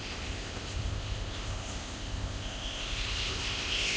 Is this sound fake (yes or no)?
yes